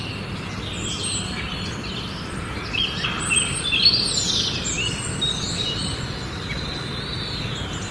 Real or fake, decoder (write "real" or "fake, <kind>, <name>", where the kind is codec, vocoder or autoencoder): real